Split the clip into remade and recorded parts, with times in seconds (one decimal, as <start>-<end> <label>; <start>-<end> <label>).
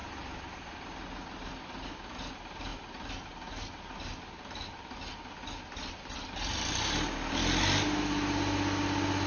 0.0-1.6 remade; 1.6-9.3 recorded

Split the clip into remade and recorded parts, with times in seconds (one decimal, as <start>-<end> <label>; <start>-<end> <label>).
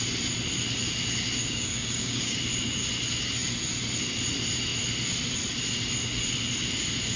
0.0-1.4 recorded; 1.4-2.4 remade; 2.4-7.2 recorded